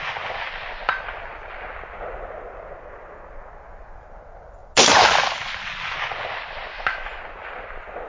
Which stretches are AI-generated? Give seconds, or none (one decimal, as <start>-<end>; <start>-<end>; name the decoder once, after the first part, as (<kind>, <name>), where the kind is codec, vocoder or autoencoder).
6.7-7.2 (autoencoder, DAC-VAE)